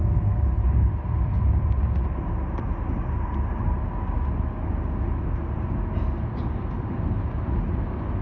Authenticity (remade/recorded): recorded